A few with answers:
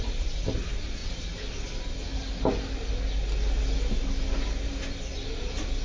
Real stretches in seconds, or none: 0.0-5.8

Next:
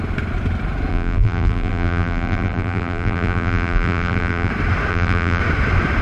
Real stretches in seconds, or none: 0.0-0.9; 4.5-4.9; 5.4-6.0

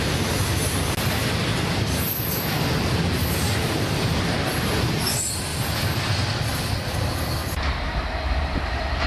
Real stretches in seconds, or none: 0.0-9.1